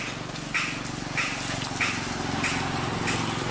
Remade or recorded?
recorded